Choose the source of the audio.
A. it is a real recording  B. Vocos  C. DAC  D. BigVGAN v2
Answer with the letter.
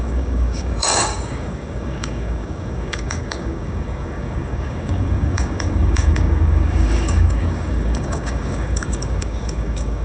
C